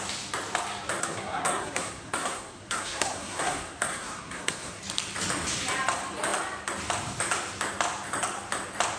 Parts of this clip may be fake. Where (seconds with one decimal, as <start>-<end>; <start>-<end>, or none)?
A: 1.0-4.8